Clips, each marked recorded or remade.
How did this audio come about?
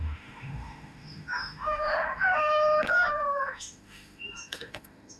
remade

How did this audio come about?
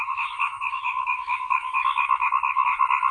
remade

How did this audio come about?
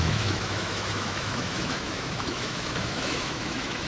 remade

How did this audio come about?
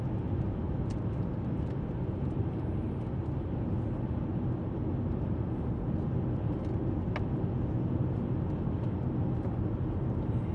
recorded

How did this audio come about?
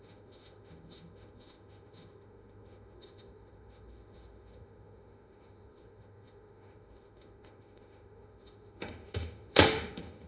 remade